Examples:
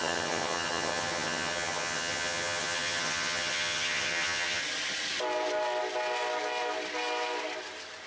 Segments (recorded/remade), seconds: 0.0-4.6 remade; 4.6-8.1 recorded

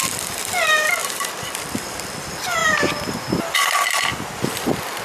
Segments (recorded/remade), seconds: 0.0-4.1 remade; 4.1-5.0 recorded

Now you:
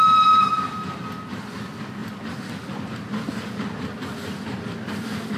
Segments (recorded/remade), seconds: 0.0-5.4 recorded